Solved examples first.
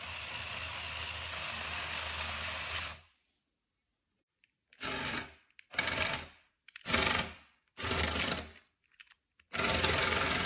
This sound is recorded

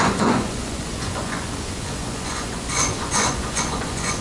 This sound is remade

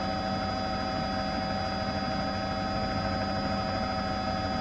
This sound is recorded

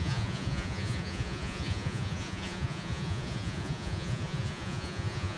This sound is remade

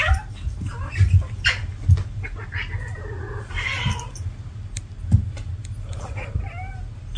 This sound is recorded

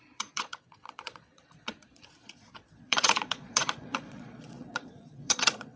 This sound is remade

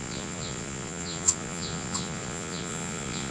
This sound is remade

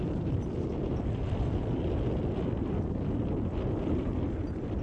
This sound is recorded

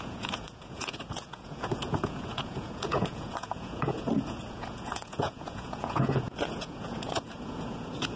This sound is remade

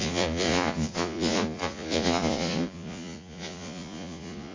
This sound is remade